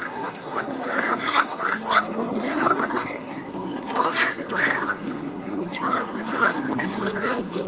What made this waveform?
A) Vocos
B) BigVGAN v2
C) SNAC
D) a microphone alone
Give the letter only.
C